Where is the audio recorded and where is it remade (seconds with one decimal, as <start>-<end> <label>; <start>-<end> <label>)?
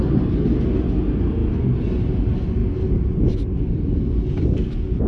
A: 0.0-5.1 recorded